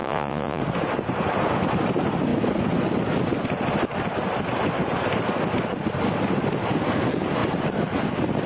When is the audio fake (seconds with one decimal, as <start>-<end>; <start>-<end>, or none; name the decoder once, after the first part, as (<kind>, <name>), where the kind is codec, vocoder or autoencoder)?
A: 0.0-0.6 (vocoder, Vocos)